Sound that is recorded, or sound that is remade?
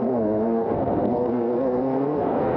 remade